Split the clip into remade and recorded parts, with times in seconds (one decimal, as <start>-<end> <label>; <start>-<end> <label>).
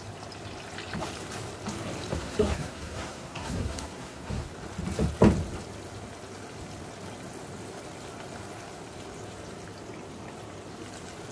0.0-2.1 recorded; 2.1-4.5 remade; 4.5-11.3 recorded